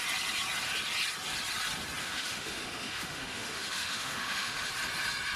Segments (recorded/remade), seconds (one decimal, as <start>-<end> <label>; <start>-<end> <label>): 0.0-2.0 recorded; 2.0-4.7 remade; 4.7-5.4 recorded